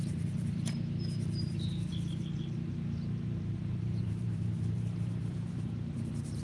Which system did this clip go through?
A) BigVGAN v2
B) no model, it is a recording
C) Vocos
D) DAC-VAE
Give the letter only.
A